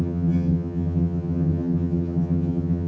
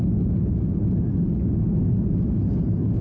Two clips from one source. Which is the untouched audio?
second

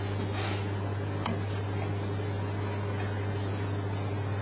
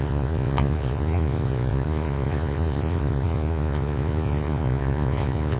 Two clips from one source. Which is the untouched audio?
first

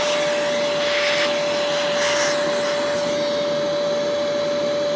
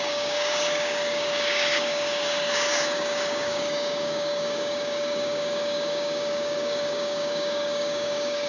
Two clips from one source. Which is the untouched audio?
first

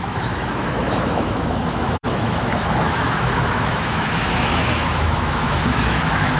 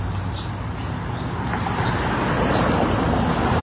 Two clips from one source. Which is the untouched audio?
second